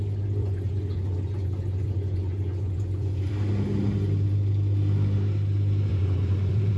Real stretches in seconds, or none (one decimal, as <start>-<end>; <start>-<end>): 0.0-0.4; 3.3-5.9